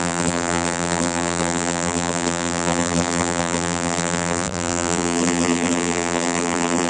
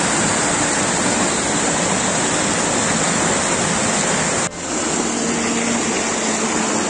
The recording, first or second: second